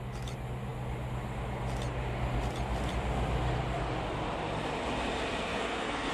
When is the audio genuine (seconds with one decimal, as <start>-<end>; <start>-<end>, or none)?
0.0-5.4